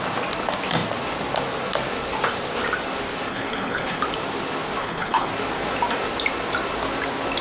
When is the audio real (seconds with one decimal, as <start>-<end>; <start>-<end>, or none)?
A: 0.0-3.3; 4.0-4.8; 5.3-7.4